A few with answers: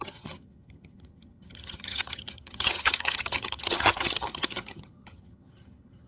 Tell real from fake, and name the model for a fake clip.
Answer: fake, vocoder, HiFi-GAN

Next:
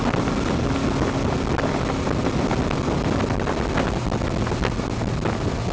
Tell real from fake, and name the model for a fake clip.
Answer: real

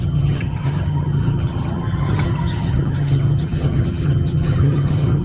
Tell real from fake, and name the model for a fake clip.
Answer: fake, vocoder, HiFi-GAN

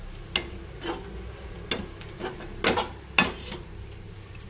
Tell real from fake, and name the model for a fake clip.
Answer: real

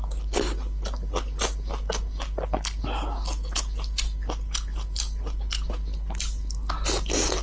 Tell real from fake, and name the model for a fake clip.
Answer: real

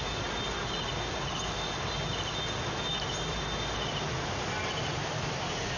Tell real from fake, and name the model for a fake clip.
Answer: real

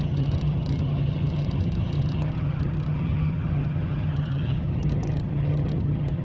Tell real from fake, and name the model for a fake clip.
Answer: fake, vocoder, HiFi-GAN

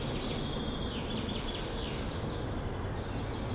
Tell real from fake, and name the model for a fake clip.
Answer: real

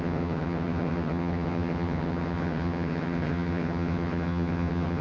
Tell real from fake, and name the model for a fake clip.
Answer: fake, vocoder, HiFi-GAN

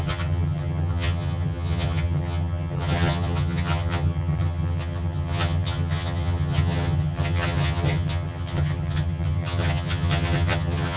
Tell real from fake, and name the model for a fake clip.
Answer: fake, vocoder, HiFi-GAN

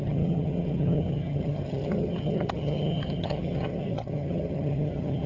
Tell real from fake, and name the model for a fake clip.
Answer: fake, vocoder, HiFi-GAN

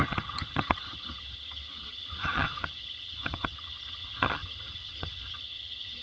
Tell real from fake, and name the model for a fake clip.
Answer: fake, vocoder, HiFi-GAN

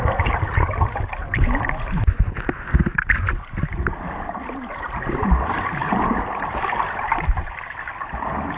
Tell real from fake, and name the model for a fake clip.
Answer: real